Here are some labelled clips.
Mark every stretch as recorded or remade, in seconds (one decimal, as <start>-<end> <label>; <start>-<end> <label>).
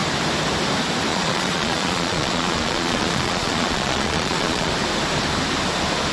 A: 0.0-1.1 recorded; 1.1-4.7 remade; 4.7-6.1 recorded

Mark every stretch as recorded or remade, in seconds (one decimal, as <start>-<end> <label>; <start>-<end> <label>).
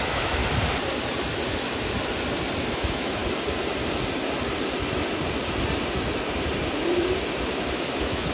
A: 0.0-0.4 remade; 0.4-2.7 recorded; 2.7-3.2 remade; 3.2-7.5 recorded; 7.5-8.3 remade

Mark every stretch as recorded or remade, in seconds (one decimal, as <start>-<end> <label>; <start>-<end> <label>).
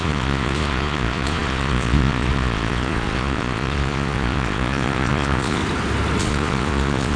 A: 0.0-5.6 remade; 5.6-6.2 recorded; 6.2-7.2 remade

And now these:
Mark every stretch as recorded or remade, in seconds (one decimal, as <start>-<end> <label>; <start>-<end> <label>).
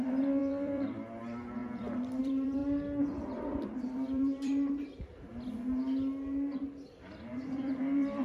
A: 0.0-1.6 remade; 1.6-2.2 recorded; 2.2-2.6 remade; 2.6-3.4 recorded; 3.4-5.3 remade; 5.3-6.6 recorded; 6.6-8.2 remade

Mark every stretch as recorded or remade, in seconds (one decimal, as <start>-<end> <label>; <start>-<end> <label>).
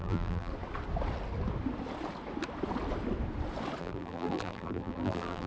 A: 0.0-0.5 remade; 0.5-3.8 recorded; 3.8-5.5 remade